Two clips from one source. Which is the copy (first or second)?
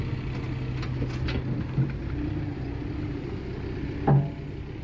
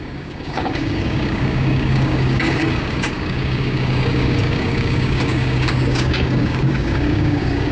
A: second